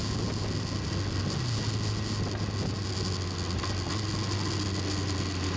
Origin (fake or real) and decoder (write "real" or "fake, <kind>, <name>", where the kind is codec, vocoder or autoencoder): real